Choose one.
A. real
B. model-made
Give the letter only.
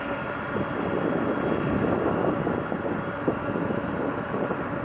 A